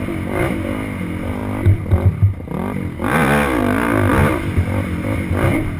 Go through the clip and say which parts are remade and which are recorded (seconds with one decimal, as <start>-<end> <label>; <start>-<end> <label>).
0.0-5.8 recorded